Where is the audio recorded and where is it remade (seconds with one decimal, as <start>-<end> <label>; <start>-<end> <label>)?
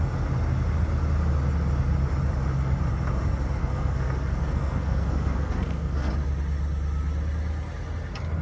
0.0-3.6 recorded; 3.6-6.1 remade; 6.1-8.4 recorded